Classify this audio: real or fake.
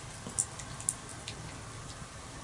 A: real